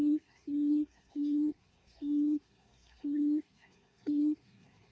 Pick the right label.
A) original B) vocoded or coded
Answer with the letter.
B